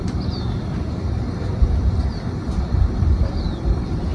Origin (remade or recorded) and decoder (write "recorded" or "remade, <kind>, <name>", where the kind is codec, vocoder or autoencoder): remade, vocoder, BigVGAN v2